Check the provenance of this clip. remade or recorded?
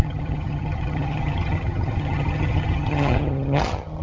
remade